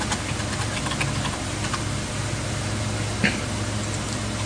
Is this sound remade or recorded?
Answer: recorded